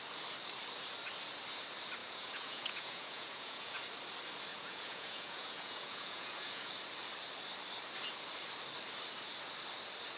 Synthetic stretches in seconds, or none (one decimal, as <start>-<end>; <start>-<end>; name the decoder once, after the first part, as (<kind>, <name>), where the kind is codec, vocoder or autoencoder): 2.0-3.8 (vocoder, Vocos); 4.5-6.7